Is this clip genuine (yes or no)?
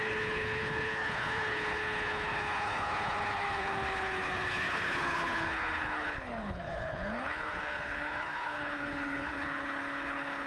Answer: no